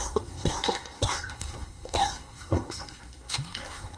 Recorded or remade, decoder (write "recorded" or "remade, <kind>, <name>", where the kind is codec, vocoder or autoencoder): remade, codec, SNAC